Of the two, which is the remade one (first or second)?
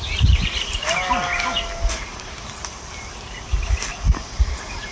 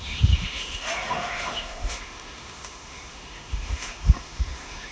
second